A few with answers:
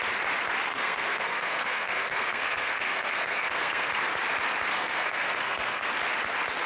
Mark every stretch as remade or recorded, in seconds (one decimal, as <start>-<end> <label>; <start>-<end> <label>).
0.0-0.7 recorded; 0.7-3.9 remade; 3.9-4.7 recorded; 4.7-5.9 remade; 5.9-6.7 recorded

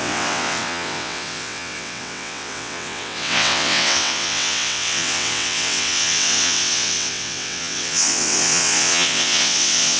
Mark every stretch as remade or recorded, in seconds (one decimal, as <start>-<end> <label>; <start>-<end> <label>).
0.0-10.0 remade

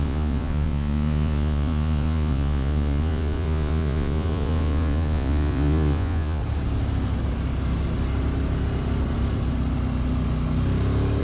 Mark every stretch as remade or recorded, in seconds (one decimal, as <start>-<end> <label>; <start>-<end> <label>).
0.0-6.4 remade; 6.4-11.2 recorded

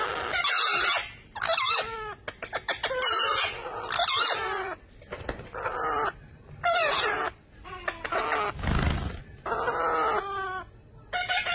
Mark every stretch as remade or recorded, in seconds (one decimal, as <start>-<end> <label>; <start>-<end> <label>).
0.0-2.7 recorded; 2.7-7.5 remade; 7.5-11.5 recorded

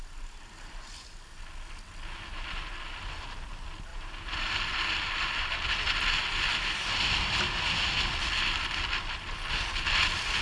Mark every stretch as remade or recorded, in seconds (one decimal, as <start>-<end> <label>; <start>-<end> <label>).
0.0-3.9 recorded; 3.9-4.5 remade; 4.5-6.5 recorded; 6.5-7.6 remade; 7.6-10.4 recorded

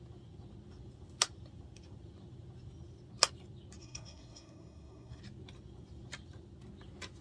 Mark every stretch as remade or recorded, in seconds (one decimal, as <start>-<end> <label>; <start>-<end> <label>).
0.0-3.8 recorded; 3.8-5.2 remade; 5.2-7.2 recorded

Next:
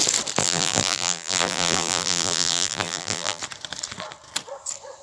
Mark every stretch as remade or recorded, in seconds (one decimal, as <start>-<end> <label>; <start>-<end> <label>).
0.0-0.4 recorded; 0.4-3.4 remade; 3.4-5.0 recorded

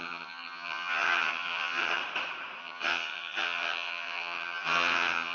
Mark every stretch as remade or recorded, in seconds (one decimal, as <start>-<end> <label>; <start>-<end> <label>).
0.0-2.0 remade; 2.0-2.6 recorded; 2.6-5.3 remade